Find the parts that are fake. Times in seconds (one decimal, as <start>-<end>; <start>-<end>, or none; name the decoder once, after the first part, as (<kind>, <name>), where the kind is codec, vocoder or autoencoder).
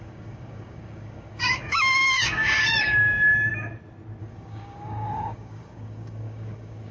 0.0-3.5 (codec, DAC); 4.2-6.9